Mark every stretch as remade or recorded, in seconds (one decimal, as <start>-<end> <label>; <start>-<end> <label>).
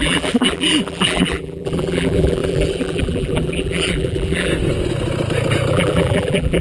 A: 0.0-4.5 remade; 4.5-5.7 recorded; 5.7-6.6 remade